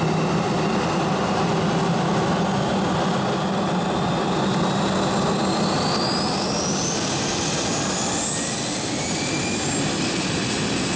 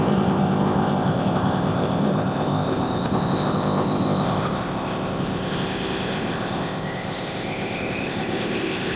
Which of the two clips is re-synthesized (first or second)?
second